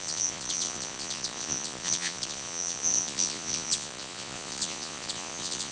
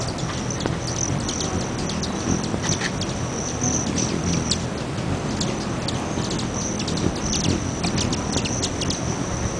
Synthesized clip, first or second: first